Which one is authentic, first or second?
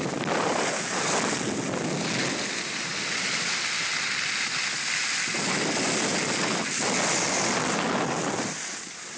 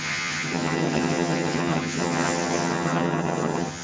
first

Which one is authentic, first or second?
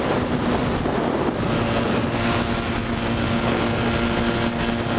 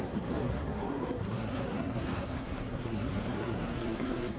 first